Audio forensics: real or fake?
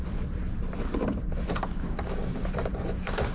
fake